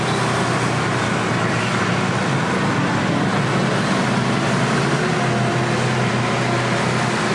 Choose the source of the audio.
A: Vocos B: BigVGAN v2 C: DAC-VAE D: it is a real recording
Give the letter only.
D